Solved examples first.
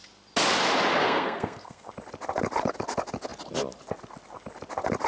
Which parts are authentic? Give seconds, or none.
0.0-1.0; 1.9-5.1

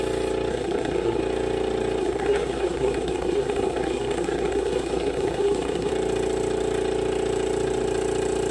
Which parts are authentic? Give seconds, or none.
0.0-0.5; 1.2-2.0; 5.9-8.5

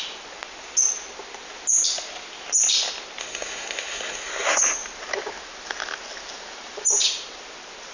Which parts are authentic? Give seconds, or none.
0.0-3.2; 4.6-7.9